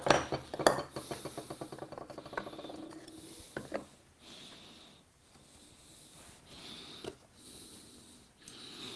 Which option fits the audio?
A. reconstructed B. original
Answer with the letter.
B